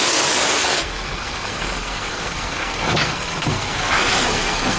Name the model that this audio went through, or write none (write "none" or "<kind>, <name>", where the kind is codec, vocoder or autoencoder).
codec, SNAC